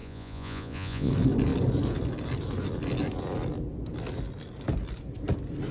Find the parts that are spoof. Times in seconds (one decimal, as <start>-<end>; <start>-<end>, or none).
0.0-1.1